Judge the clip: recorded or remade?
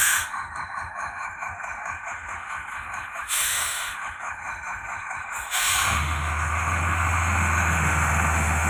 remade